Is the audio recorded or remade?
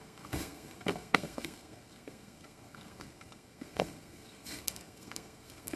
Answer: remade